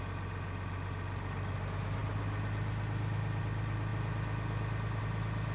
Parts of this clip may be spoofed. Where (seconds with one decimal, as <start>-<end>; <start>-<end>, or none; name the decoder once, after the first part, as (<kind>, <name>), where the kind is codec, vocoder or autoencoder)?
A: none